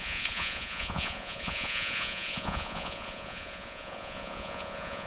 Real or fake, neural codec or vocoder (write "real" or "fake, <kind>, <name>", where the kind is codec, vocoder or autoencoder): fake, vocoder, Vocos